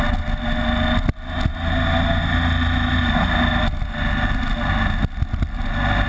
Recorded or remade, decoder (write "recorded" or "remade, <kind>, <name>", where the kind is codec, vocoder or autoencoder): recorded